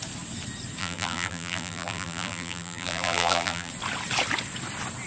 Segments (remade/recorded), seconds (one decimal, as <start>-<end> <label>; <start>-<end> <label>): 0.0-0.8 recorded; 0.8-3.7 remade; 3.7-5.1 recorded